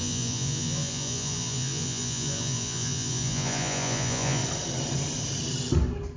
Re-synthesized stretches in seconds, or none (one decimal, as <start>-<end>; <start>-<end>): 0.0-4.4